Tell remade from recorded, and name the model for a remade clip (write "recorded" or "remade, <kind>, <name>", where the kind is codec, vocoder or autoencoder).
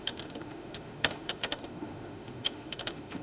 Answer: remade, autoencoder, DAC-VAE